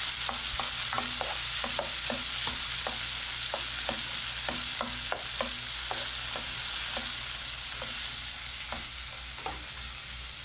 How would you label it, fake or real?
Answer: real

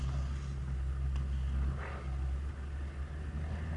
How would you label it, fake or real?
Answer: real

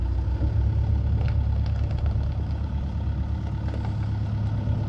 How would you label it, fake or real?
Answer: real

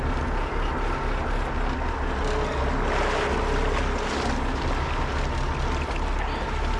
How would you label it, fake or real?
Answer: real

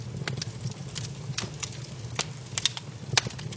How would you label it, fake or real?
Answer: real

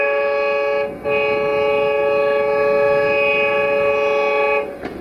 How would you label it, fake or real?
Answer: real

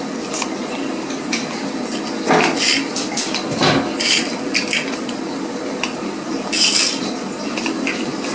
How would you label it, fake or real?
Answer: real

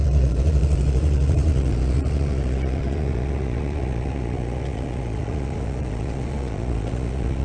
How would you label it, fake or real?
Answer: fake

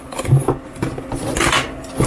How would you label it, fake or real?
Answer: real